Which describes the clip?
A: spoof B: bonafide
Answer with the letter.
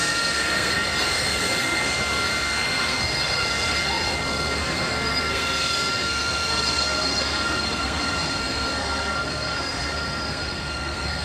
A